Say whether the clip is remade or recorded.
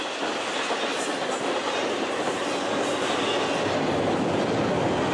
recorded